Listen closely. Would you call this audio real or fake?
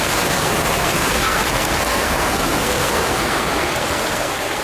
fake